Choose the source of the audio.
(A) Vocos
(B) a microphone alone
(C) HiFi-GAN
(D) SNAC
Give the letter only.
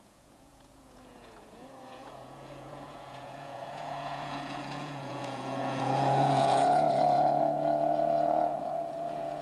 A